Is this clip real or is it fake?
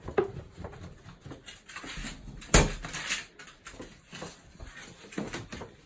real